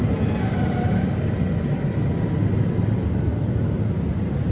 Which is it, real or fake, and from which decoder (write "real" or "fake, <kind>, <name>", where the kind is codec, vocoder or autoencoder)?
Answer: real